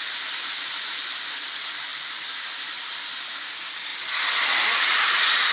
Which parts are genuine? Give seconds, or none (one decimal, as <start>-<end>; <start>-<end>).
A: 0.0-5.5